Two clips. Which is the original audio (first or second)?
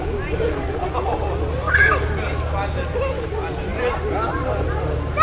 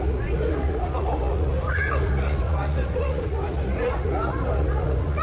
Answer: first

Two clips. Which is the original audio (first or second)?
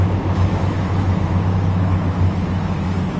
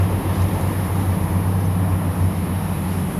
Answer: second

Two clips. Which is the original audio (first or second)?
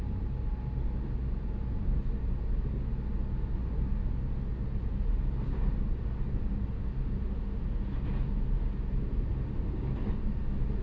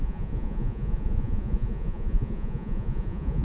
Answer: first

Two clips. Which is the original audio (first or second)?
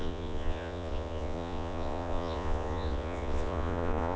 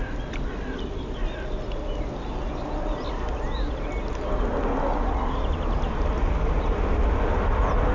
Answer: second